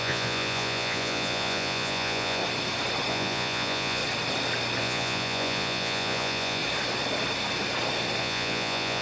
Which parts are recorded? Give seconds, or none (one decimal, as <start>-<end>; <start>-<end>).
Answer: 2.4-3.1; 4.0-4.8; 6.6-8.2